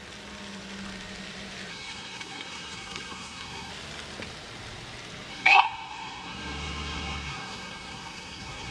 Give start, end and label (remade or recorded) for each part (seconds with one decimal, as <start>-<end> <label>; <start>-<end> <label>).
0.0-1.7 recorded; 1.7-3.7 remade; 3.7-5.3 recorded; 5.3-8.7 remade